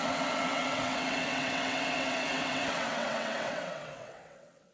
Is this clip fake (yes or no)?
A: yes